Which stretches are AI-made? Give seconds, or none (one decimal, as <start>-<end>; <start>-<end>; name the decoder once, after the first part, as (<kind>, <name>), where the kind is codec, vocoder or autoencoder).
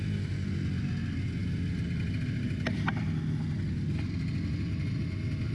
none